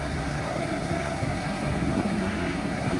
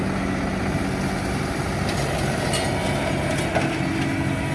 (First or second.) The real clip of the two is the second